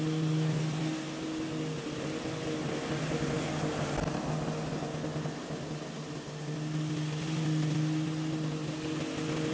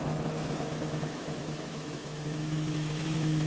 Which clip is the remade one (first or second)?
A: second